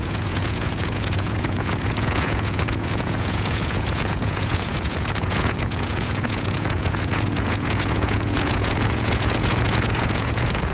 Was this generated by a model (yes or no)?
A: yes